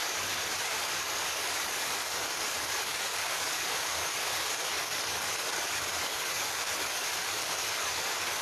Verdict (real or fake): fake